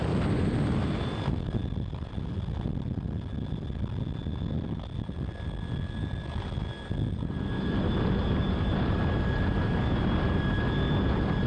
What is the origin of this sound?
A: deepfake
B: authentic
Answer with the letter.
B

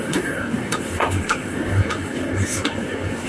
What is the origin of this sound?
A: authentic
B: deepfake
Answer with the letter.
B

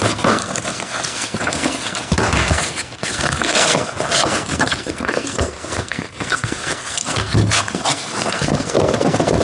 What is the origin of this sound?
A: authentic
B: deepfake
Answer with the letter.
B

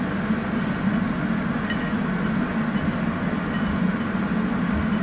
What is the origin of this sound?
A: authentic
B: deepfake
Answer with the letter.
A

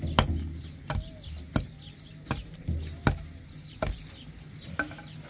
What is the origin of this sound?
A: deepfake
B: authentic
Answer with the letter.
B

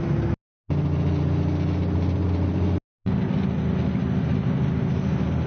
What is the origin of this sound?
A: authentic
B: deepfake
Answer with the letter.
A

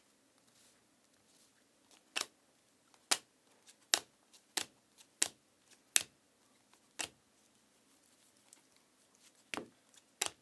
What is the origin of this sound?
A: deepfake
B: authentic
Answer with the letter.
B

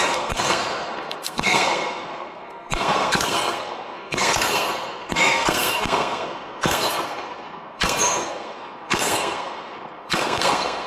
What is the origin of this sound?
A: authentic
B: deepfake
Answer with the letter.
B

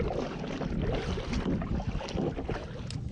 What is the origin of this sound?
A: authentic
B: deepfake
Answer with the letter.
A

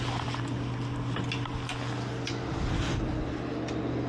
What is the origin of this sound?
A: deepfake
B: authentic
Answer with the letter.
B